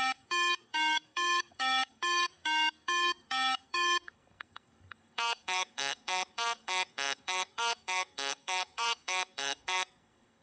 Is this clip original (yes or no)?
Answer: no